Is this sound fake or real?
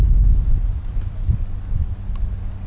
real